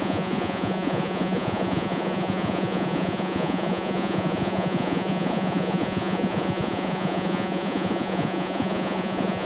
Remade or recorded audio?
remade